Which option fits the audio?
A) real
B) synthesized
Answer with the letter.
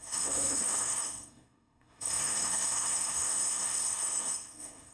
B